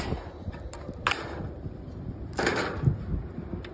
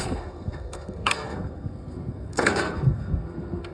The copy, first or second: second